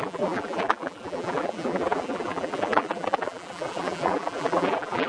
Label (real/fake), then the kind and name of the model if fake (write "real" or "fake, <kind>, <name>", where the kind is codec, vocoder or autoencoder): fake, vocoder, BigVGAN v2